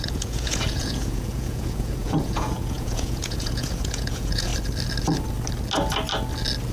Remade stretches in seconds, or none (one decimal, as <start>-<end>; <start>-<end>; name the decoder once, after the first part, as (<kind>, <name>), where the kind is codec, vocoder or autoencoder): 0.0-4.5 (vocoder, Vocos)